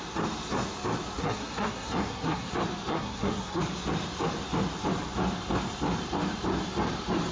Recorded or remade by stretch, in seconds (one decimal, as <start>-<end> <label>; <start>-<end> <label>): 0.0-1.2 recorded; 1.2-2.5 remade; 2.5-2.9 recorded; 2.9-3.6 remade; 3.6-7.3 recorded